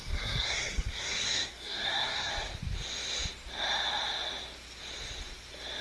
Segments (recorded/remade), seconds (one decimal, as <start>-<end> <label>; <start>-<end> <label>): 0.0-2.3 remade; 2.3-5.8 recorded